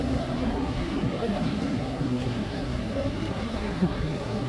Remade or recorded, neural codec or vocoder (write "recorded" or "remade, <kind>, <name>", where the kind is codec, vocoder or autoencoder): remade, codec, SNAC